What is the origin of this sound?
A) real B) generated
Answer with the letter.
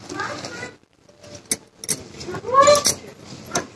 A